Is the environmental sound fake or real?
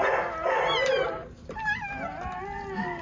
real